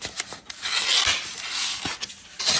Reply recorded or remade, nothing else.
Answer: recorded